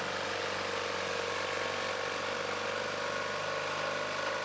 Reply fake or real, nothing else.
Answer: real